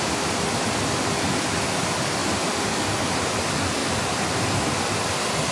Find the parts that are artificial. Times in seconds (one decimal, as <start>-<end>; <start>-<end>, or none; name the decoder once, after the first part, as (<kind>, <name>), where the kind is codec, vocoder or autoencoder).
none